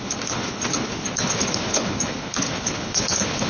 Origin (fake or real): fake